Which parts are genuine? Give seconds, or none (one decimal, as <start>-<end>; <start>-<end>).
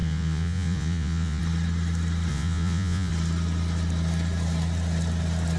1.4-2.3; 3.1-5.6